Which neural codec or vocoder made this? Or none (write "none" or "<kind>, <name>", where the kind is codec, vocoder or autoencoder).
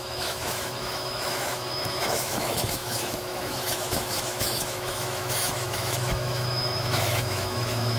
autoencoder, DAC-VAE